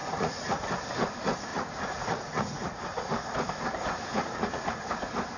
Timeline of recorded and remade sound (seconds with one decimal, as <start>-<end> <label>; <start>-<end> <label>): 0.0-0.6 remade; 0.6-1.5 recorded; 1.5-2.8 remade; 2.8-4.0 recorded; 4.0-4.9 remade; 4.9-5.4 recorded